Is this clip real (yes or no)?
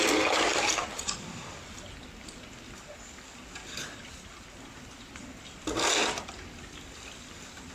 yes